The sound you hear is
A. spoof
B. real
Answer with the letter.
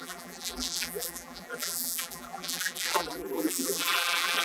A